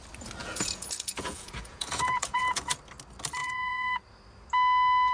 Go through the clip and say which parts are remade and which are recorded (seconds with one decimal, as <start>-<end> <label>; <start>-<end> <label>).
0.0-0.4 recorded; 0.4-2.8 remade; 2.8-3.4 recorded; 3.4-4.0 remade; 4.0-5.1 recorded